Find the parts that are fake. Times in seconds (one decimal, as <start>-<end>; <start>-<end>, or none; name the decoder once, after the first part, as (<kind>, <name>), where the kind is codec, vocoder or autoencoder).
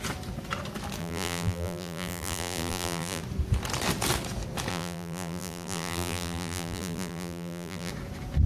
1.0-3.2 (vocoder, BigVGAN v2); 4.7-7.9